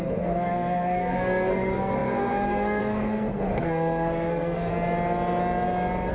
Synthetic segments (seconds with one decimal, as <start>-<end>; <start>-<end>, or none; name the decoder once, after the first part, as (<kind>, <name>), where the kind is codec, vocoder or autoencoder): 0.0-4.7 (codec, SNAC)